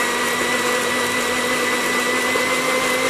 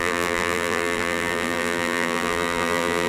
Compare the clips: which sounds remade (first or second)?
second